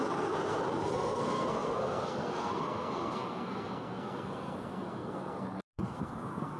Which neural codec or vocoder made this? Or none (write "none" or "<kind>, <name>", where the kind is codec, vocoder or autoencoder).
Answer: codec, SNAC